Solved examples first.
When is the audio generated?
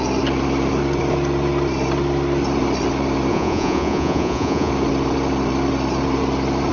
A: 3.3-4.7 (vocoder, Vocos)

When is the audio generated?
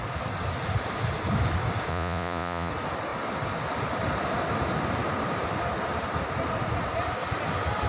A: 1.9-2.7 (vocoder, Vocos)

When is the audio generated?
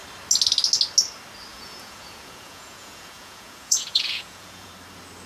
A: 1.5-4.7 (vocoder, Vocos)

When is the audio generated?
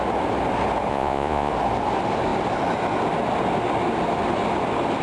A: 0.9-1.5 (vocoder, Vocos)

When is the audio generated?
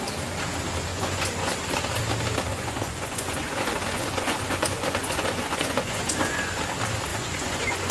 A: 0.9-1.5 (vocoder, Vocos); 2.5-6.6; 7.1-7.9